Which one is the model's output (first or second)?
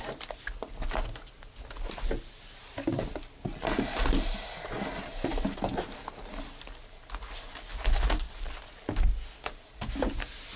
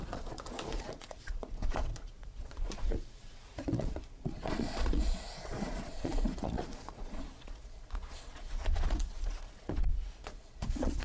second